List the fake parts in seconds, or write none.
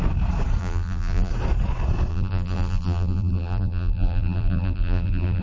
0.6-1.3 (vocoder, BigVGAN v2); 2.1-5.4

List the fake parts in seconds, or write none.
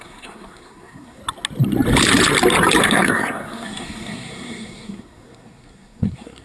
0.0-1.2 (codec, SNAC); 2.8-6.4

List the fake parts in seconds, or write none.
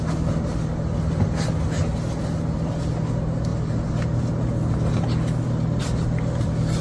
none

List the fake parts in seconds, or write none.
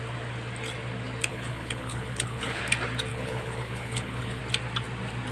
1.3-2.6 (codec, HILCodec); 3.1-4.4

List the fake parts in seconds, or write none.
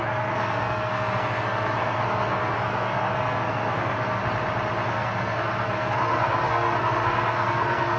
0.0-4.2 (codec, SNAC); 4.9-8.0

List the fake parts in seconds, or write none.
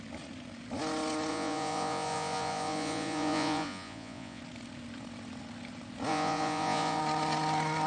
1.3-4.4 (vocoder, Vocos); 6.1-7.0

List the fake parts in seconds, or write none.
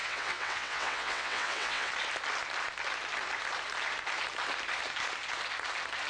0.0-1.9 (vocoder, WaveNeXt)